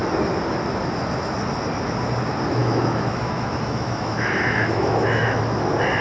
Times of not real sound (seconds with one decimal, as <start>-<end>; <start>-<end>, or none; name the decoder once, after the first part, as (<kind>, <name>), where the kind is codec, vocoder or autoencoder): 2.6-5.4 (autoencoder, DAC-VAE)